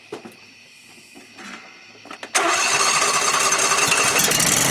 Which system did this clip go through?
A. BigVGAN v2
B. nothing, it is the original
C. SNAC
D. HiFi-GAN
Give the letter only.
B